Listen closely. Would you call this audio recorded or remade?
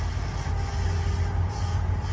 recorded